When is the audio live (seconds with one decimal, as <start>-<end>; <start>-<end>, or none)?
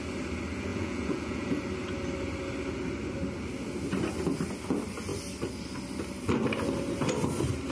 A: 0.0-0.7; 1.6-7.7